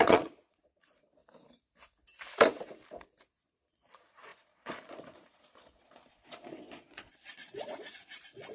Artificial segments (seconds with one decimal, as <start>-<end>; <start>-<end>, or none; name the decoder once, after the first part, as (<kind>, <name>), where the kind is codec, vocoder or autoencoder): 0.0-1.2 (vocoder, Vocos); 3.3-8.5